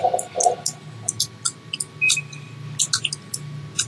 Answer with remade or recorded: recorded